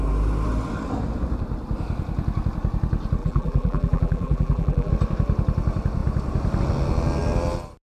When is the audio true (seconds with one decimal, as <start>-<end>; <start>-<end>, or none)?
0.0-3.2; 4.9-7.8